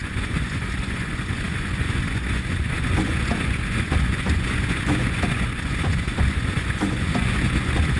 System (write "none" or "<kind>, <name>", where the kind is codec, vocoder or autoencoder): vocoder, Vocos